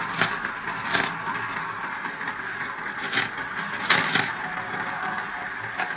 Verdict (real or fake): real